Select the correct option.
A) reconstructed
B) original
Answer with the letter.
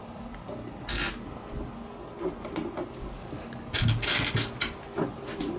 B